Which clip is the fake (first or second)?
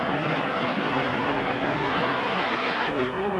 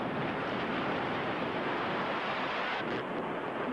first